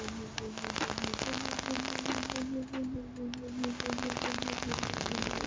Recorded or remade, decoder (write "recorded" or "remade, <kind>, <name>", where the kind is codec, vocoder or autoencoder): recorded